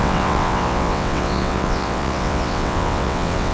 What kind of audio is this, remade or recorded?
remade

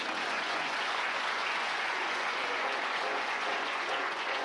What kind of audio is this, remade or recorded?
remade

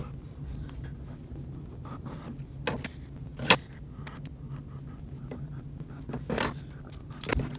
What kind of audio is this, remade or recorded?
recorded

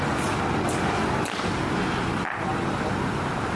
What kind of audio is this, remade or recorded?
recorded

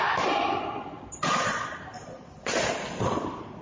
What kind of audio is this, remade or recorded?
recorded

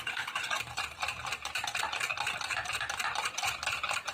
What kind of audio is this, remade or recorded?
recorded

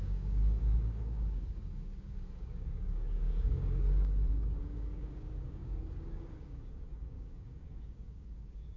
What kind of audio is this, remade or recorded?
remade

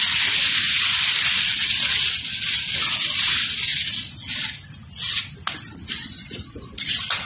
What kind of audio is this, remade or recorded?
recorded